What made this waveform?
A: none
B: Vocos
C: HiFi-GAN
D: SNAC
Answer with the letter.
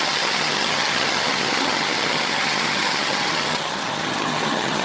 C